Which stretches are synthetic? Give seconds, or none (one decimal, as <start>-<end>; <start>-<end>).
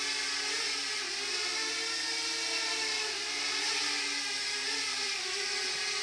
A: none